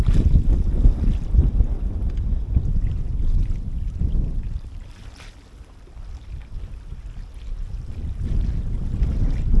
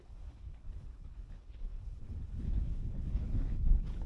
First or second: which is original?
first